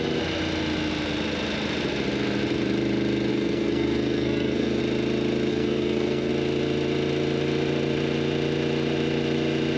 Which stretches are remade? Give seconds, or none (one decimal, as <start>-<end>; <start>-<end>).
3.3-4.8; 5.5-6.3